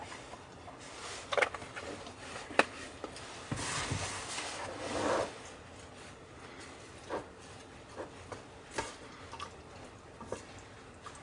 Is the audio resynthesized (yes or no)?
no